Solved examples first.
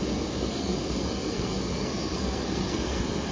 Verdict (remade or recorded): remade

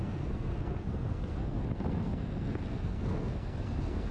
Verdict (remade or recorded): remade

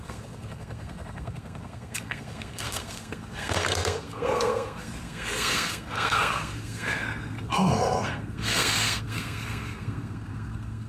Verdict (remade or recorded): remade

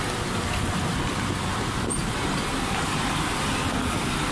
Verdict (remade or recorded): recorded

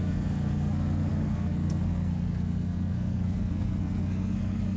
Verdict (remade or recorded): remade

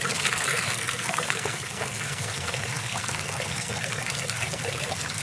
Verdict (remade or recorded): remade